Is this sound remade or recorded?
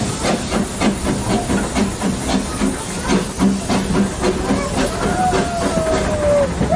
recorded